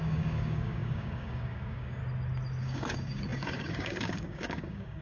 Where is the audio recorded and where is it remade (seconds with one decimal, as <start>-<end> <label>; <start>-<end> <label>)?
0.0-2.0 remade; 2.0-2.6 recorded; 2.6-5.0 remade